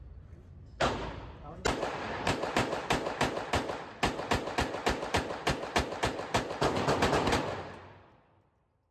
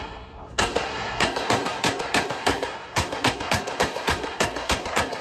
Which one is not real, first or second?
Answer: second